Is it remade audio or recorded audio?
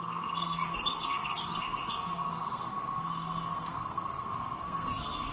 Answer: remade